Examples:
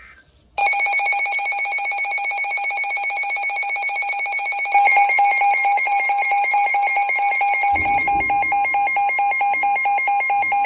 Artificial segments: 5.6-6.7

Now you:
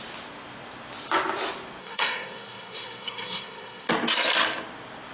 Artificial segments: 1.8-3.9

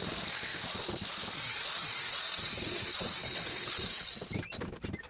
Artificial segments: 3.2-4.1

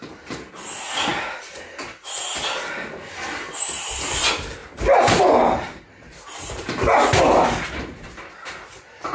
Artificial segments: 4.6-7.2